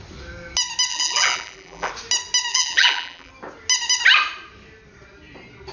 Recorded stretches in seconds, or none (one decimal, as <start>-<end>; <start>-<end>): 0.0-0.9; 1.9-2.5; 3.3-5.7